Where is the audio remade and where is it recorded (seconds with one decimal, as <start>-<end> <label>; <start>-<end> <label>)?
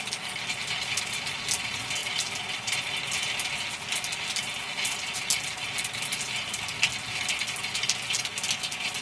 0.0-9.0 recorded